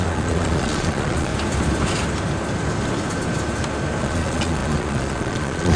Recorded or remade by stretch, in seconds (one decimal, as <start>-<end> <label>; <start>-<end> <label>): 0.0-1.3 remade; 1.3-4.0 recorded; 4.0-5.8 remade